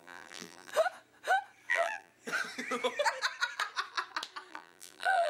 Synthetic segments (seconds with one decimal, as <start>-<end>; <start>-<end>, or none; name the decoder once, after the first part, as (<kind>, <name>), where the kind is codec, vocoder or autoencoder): 0.0-0.7 (vocoder, BigVGAN v2); 1.7-2.1; 4.5-5.3